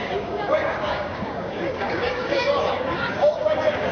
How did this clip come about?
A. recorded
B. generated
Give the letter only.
B